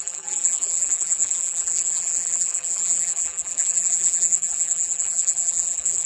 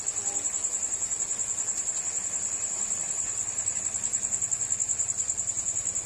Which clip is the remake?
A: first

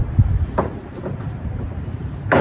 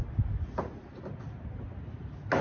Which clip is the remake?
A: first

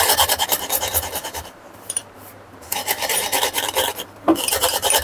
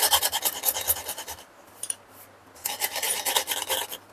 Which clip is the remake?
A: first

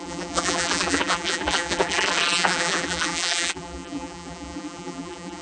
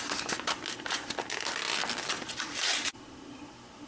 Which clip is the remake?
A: first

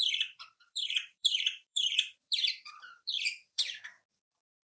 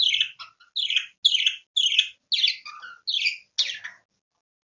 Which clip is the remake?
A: first